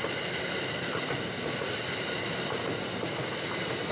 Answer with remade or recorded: recorded